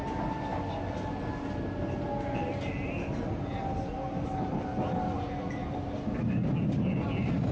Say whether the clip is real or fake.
real